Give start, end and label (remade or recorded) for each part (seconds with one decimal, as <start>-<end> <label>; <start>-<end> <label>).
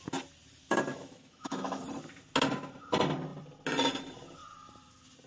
0.0-0.9 recorded; 0.9-1.8 remade; 1.8-5.3 recorded